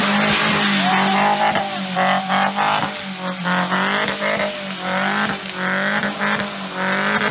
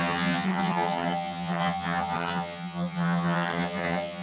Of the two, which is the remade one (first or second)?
second